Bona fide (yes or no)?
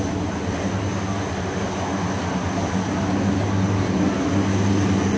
yes